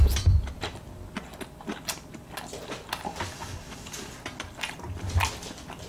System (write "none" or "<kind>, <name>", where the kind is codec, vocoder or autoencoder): none